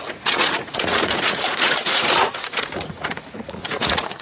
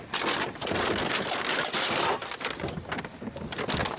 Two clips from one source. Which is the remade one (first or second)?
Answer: first